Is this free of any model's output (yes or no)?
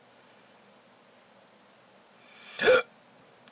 yes